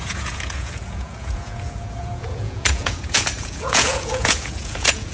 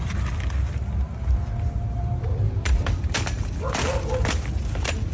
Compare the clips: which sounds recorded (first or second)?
second